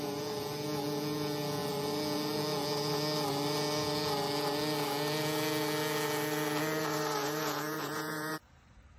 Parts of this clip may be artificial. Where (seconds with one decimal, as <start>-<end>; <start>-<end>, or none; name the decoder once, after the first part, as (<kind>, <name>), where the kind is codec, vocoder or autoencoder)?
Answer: 7.2-8.3 (vocoder, Vocos)